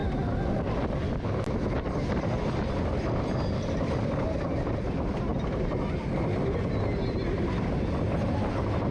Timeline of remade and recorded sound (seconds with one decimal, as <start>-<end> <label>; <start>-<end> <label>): 0.0-3.0 recorded; 3.0-5.3 remade; 5.3-7.9 recorded; 7.9-8.9 remade